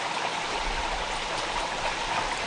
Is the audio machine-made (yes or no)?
no